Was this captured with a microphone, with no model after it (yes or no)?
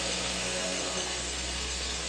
no